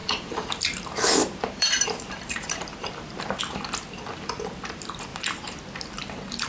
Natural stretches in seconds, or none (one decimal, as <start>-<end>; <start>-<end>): 3.4-5.1; 5.6-6.5